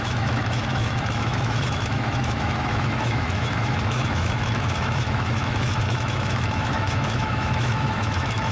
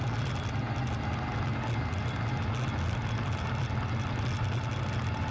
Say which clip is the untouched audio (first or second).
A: second